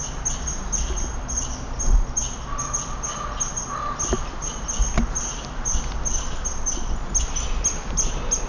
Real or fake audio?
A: real